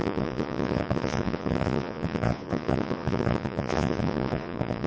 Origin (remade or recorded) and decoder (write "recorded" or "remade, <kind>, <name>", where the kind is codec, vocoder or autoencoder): remade, vocoder, Vocos